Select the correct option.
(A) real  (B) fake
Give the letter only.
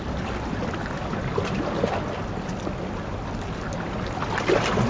A